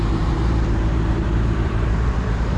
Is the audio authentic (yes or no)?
no